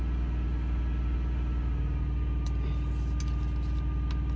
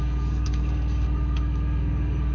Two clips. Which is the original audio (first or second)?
first